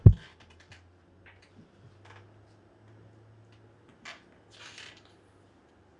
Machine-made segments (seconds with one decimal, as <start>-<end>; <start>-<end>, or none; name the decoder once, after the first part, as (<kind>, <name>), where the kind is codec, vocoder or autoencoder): none

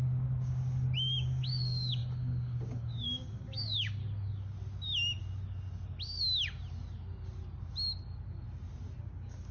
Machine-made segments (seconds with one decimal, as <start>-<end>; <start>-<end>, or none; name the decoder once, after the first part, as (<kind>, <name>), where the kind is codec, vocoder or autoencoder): 0.0-4.0 (codec, DAC); 9.0-9.5

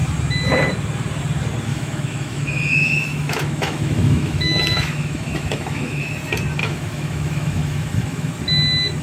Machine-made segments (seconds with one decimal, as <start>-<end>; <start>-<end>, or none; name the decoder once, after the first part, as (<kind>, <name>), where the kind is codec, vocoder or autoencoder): 1.7-6.1 (autoencoder, DAC-VAE); 6.6-8.3